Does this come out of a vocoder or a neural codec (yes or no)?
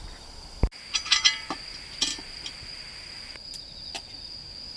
no